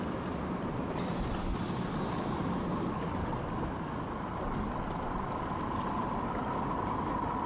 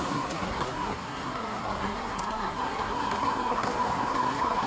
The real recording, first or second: first